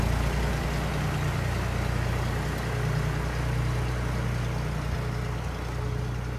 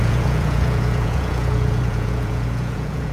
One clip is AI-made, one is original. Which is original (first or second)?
first